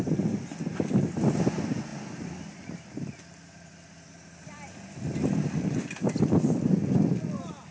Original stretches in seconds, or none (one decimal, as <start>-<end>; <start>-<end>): 0.0-7.7